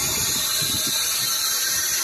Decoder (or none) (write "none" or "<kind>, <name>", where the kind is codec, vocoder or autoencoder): none